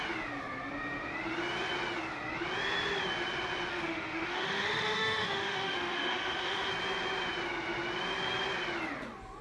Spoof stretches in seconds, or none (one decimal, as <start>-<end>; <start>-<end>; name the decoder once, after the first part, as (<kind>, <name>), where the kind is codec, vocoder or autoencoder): 3.7-6.7 (autoencoder, DAC-VAE)